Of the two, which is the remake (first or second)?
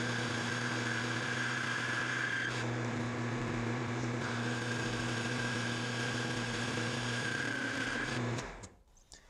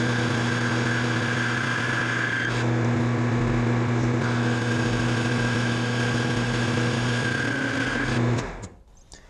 first